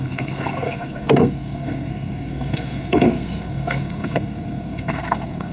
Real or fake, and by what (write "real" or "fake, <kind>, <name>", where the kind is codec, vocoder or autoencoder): fake, codec, SNAC